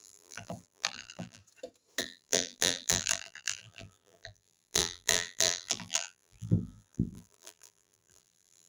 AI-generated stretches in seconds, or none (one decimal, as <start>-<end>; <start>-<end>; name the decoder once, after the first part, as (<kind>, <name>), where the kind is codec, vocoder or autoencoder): 0.0-1.4 (vocoder, BigVGAN v2); 2.0-8.7